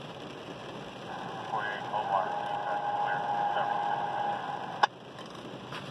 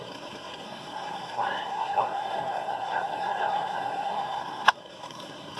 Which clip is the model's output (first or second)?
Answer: second